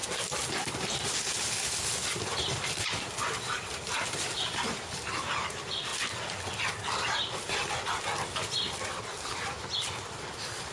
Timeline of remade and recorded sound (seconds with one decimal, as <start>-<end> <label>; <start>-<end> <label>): 0.0-2.5 recorded; 2.5-5.9 remade; 5.9-10.2 recorded; 10.2-10.7 remade